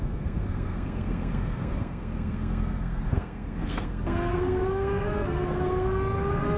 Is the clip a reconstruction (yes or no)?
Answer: yes